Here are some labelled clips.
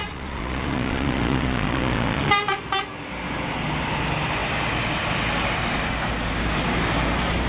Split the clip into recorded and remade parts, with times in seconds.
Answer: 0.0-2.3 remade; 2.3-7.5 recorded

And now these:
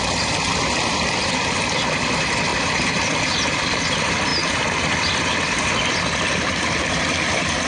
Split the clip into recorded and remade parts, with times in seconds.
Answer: 0.0-7.7 recorded